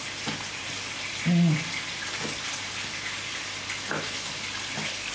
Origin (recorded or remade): recorded